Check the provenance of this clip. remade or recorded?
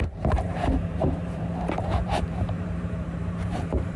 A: remade